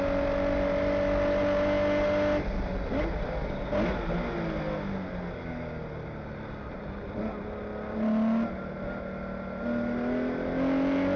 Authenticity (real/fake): real